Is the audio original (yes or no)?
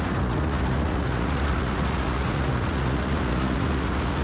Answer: no